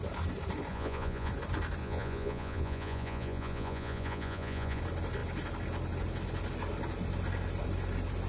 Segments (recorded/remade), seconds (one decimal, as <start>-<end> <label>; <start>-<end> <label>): 0.0-0.7 recorded; 0.7-1.3 remade; 1.3-1.8 recorded; 1.8-4.8 remade; 4.8-8.3 recorded